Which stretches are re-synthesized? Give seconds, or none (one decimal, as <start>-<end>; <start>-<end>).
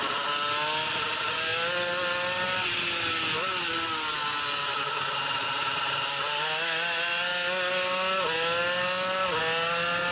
none